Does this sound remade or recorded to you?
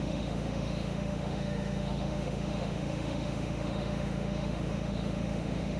remade